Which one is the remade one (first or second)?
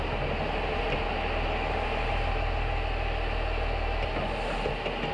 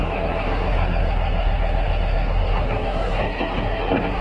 second